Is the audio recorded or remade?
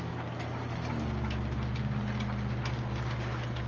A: recorded